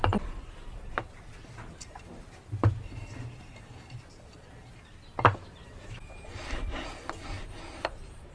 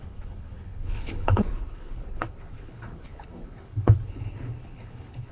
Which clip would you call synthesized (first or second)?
second